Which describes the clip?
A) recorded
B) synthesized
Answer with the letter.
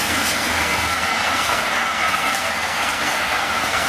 B